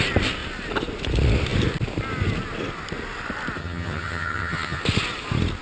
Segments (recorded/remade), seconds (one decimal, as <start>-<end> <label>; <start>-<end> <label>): 0.0-3.6 recorded; 3.6-4.8 remade; 4.8-5.6 recorded